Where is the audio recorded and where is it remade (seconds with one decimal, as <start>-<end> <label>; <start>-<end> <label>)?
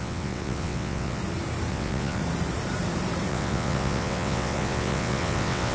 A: 0.0-1.2 remade; 1.2-1.7 recorded; 1.7-2.2 remade; 2.2-3.3 recorded; 3.3-5.7 remade